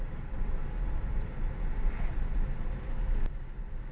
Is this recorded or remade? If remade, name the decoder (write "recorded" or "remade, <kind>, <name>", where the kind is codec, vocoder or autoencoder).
recorded